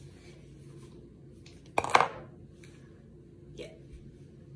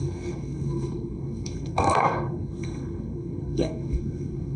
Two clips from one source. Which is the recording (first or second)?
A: first